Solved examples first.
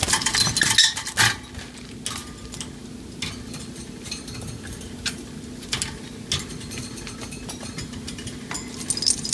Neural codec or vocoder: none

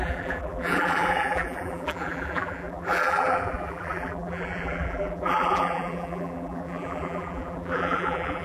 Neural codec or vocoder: vocoder, BigVGAN v2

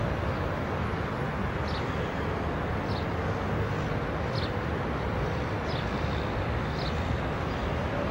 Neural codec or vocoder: none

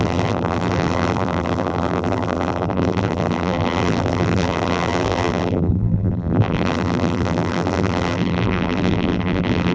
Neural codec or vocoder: vocoder, BigVGAN v2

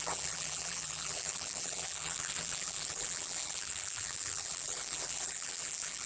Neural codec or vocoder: vocoder, BigVGAN v2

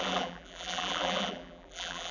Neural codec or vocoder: vocoder, BigVGAN v2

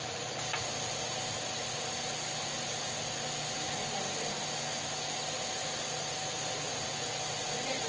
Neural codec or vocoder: none